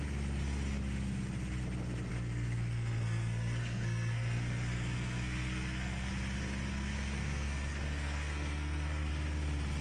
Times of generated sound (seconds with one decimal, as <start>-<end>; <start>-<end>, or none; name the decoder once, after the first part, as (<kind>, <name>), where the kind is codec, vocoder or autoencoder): 2.1-6.1 (codec, SNAC); 6.7-9.1